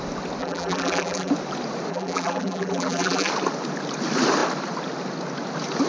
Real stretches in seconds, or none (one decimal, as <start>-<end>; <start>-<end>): 0.0-0.4; 1.3-1.9; 3.3-5.9